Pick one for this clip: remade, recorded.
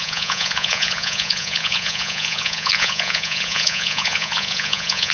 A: remade